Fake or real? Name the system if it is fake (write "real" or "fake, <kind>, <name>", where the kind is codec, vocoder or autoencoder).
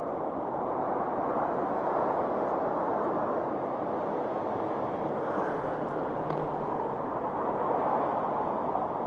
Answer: real